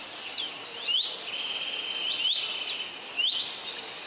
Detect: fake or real real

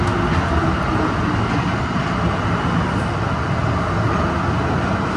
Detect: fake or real real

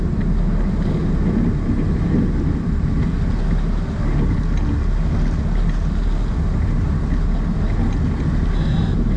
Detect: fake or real real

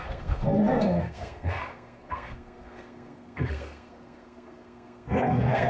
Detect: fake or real fake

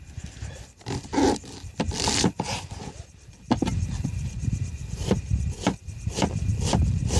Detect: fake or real fake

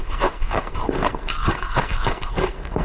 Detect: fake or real fake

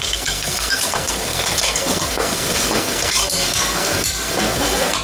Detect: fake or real fake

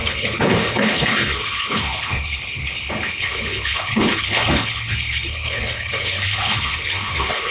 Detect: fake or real fake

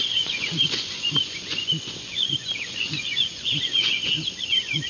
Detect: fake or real fake